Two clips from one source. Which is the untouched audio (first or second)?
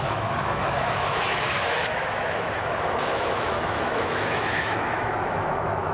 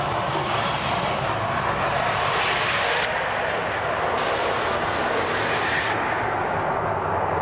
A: second